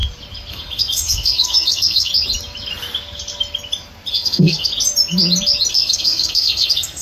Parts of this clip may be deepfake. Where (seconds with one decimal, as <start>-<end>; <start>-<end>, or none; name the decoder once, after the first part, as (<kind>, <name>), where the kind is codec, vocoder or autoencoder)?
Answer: 0.5-2.1 (codec, SNAC); 4.1-4.7; 5.7-7.0